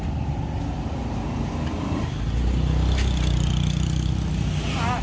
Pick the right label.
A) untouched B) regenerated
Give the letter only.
A